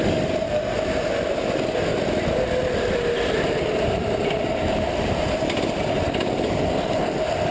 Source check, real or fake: real